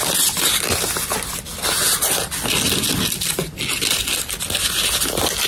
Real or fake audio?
real